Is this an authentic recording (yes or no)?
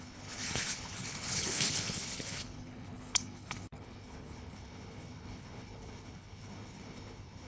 no